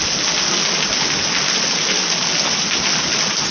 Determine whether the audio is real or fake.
real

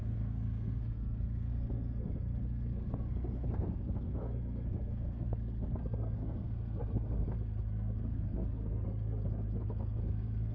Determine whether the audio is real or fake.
fake